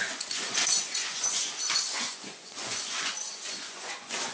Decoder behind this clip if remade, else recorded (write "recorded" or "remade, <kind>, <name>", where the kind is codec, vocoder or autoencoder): remade, vocoder, Vocos